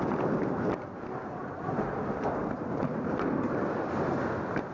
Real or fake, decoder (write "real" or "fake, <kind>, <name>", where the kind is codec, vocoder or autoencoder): real